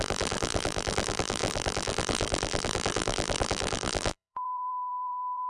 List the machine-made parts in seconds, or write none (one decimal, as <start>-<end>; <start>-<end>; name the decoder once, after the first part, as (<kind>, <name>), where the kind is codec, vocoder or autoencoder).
0.0-5.5 (vocoder, BigVGAN v2)